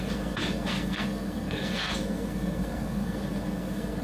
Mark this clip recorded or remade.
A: remade